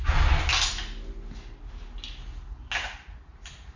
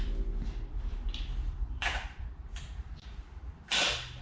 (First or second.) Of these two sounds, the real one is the first